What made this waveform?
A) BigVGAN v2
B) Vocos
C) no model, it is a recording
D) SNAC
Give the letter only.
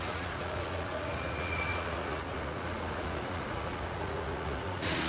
B